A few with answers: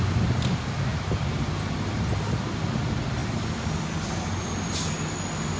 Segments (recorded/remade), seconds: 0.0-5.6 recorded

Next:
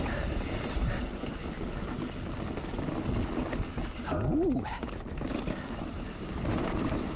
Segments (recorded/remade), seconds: 0.0-1.4 remade; 1.4-5.7 recorded; 5.7-7.2 remade

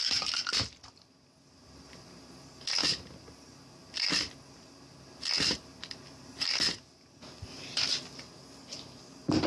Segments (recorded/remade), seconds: 0.0-9.5 recorded

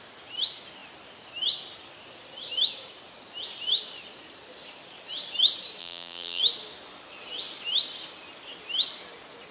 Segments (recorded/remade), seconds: 0.0-5.8 recorded; 5.8-6.4 remade; 6.4-9.5 recorded

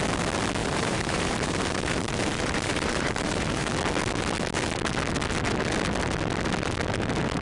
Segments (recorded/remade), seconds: 0.0-0.6 recorded; 0.6-3.7 remade; 3.7-7.4 recorded

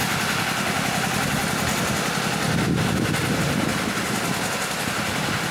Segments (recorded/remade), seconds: 0.0-5.5 recorded

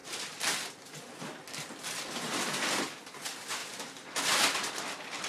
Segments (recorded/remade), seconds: 0.0-2.9 remade; 2.9-3.6 recorded; 3.6-5.3 remade